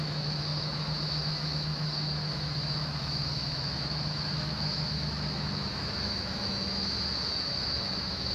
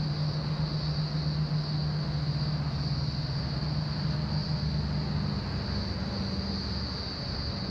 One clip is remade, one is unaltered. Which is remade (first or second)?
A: first